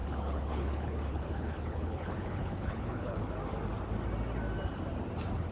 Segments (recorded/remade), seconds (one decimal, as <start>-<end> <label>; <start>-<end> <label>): 0.0-3.2 remade; 3.2-5.5 recorded